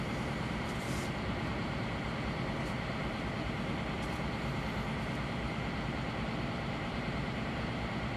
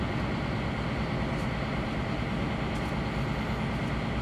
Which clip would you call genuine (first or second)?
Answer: second